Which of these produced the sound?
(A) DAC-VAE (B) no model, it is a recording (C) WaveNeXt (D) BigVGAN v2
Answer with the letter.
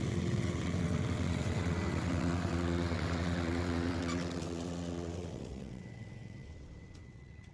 C